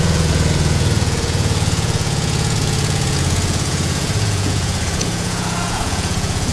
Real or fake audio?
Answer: fake